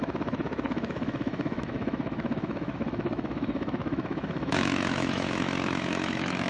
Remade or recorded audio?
remade